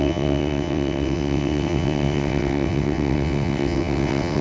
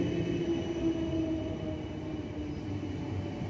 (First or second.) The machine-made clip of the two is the first